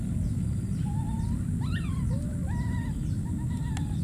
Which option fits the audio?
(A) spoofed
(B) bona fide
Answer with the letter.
B